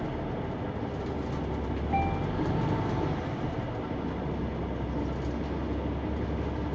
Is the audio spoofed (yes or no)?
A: no